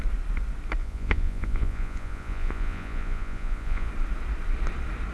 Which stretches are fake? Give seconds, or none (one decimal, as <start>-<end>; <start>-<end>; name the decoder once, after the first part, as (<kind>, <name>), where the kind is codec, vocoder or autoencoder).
0.8-3.9 (vocoder, Vocos)